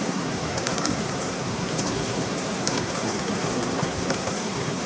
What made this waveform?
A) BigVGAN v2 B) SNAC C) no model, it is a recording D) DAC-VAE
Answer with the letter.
B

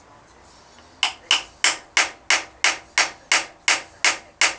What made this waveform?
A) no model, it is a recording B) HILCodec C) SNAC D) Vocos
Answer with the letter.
A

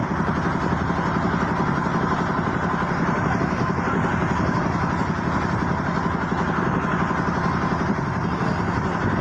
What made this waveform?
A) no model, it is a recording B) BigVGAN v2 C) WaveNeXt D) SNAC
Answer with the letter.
A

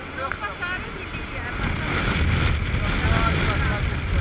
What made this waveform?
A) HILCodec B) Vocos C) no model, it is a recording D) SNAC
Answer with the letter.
C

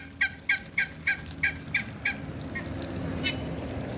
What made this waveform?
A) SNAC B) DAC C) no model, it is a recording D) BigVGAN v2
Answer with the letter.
C